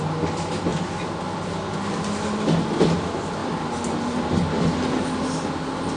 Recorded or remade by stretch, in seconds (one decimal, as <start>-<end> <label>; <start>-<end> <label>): 0.0-6.0 recorded